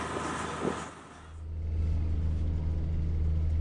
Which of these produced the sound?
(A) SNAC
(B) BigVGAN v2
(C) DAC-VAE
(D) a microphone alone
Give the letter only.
D